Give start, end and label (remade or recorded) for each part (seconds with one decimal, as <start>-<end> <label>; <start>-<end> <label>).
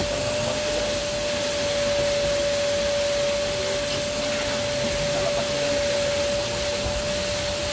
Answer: 0.0-7.7 recorded